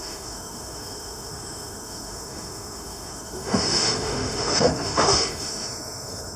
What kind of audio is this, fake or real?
fake